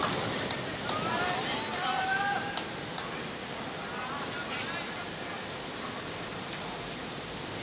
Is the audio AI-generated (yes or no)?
no